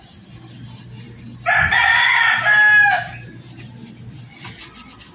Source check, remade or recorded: recorded